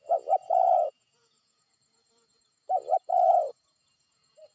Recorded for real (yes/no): no